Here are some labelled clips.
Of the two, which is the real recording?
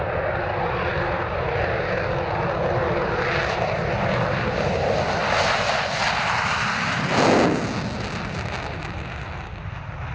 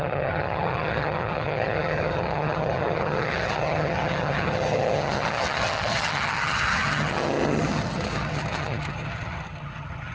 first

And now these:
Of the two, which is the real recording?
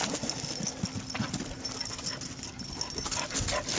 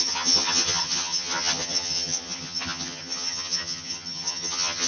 first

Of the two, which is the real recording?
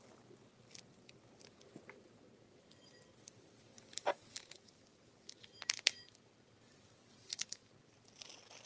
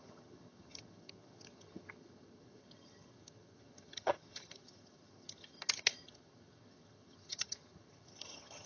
first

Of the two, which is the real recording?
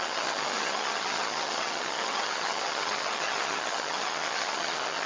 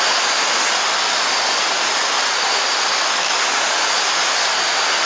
second